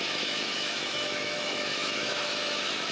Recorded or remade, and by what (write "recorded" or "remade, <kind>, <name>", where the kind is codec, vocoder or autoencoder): remade, autoencoder, DAC-VAE